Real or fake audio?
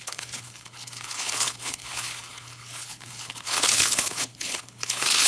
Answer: fake